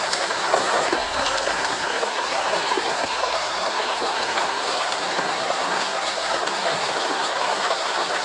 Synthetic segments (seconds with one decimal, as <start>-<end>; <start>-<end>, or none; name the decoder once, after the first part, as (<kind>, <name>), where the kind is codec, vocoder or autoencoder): 0.0-8.2 (codec, SNAC)